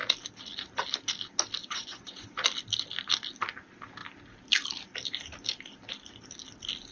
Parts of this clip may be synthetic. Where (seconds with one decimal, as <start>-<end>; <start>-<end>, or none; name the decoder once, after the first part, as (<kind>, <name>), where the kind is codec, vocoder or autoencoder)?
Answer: 1.6-2.3 (vocoder, Vocos)

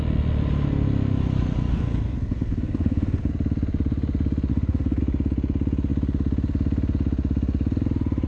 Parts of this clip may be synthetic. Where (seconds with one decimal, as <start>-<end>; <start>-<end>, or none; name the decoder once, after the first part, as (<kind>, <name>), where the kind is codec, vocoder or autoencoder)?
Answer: 1.7-3.3 (codec, SNAC); 4.5-5.0

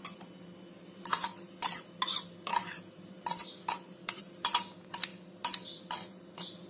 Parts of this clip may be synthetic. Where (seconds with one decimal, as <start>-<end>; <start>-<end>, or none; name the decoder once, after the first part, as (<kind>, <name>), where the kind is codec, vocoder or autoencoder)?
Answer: 2.5-4.2 (vocoder, BigVGAN v2); 5.1-5.8

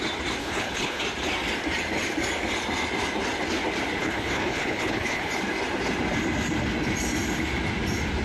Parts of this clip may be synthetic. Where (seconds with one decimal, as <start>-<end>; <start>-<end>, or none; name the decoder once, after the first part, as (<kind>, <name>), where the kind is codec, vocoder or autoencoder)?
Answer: 0.4-1.0 (codec, HILCodec); 4.0-5.3